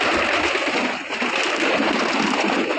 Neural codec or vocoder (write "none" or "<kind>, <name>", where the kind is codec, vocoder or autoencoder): none